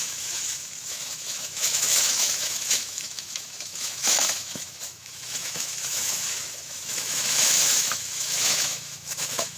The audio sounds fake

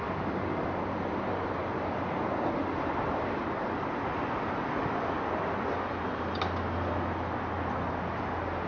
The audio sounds real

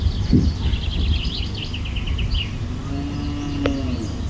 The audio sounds real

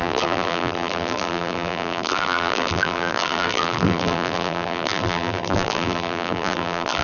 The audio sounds fake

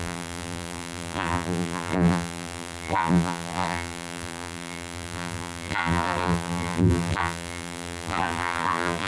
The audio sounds fake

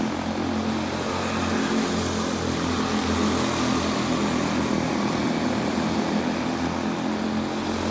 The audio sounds real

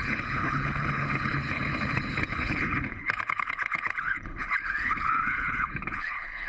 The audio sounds fake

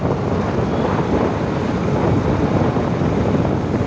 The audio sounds real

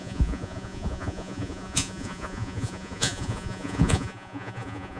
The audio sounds fake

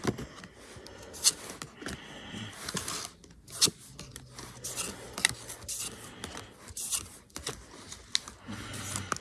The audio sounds real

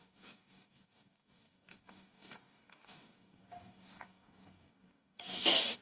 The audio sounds fake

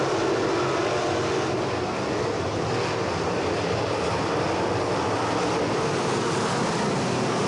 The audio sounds real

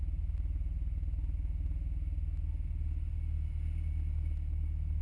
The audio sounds real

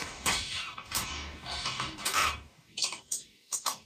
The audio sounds fake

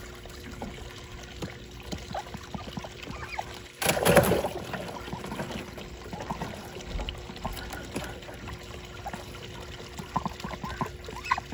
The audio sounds real